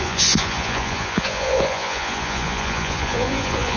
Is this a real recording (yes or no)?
no